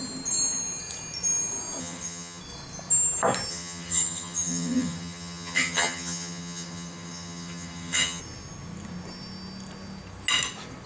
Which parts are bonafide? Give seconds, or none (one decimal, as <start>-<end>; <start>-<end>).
0.0-1.8; 2.4-3.5; 8.2-10.9